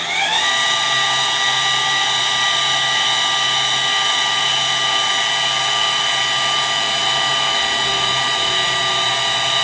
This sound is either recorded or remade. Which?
recorded